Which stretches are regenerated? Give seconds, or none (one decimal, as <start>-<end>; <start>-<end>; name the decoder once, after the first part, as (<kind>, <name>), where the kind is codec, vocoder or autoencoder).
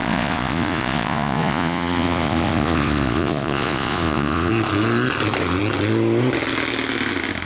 0.0-4.5 (vocoder, Vocos)